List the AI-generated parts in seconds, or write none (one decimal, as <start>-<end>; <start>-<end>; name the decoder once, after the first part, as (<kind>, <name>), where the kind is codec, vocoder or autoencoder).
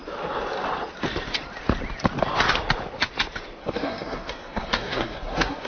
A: 3.6-5.7 (codec, SNAC)